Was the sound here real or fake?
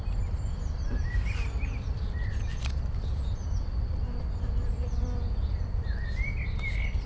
real